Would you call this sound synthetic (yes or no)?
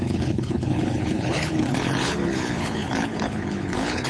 yes